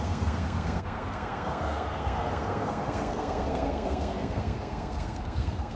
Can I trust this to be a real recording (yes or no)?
no